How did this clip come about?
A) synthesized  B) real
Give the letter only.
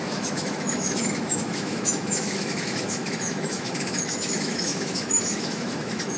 A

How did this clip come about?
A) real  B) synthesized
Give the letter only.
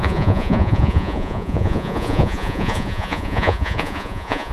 B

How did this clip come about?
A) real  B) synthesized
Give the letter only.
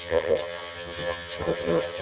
B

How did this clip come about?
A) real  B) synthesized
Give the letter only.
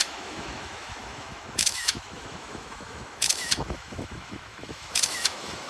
B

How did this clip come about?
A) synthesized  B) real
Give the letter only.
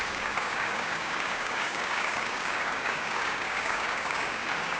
A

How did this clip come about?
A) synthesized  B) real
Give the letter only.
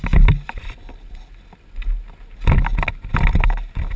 B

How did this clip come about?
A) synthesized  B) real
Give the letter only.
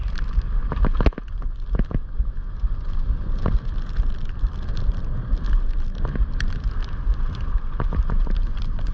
B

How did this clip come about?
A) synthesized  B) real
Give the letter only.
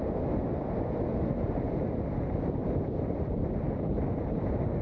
B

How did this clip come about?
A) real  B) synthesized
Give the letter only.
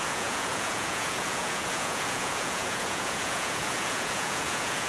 B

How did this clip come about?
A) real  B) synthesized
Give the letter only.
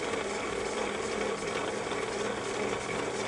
A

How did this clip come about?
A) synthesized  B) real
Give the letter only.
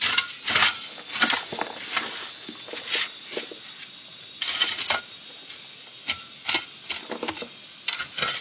B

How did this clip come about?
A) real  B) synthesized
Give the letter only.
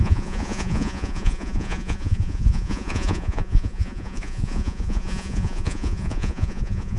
B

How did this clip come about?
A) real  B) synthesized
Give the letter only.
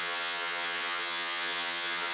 B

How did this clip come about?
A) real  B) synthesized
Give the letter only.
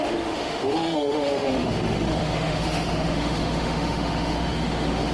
B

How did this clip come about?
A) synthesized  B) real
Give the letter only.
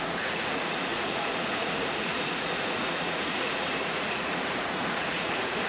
A